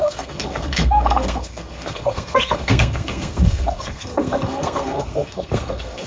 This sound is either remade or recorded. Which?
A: remade